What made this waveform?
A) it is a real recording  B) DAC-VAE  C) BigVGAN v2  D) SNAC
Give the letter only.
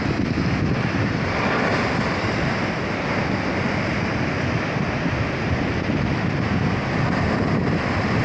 A